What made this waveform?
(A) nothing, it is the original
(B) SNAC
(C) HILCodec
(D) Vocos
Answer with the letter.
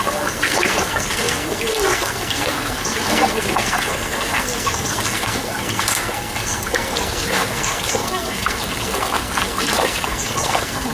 B